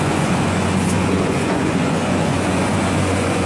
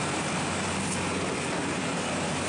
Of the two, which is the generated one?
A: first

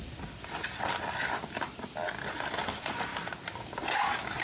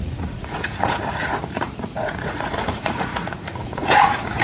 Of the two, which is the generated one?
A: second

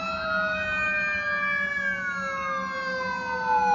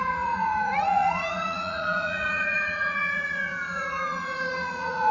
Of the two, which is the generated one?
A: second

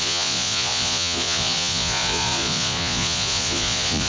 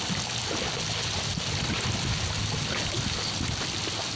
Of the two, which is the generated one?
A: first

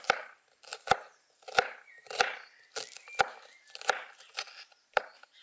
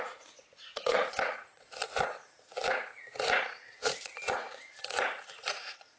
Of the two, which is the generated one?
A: second